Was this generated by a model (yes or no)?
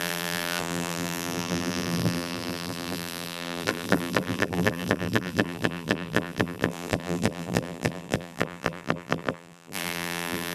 yes